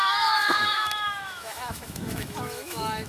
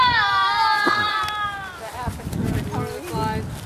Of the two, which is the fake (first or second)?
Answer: first